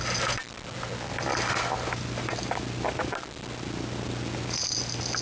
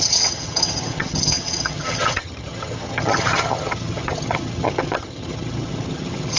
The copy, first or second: second